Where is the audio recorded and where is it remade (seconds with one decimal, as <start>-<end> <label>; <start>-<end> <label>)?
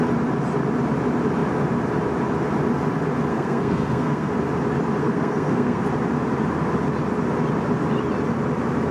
0.0-3.3 recorded; 3.3-4.3 remade; 4.3-5.0 recorded; 5.0-5.8 remade; 5.8-8.9 recorded